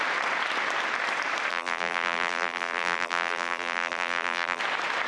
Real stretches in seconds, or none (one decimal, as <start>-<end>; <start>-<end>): 0.0-1.5; 4.6-5.1